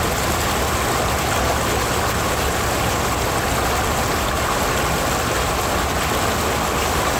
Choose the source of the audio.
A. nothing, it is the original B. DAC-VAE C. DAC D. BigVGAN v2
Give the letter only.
A